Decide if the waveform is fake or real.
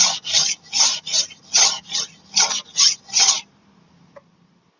real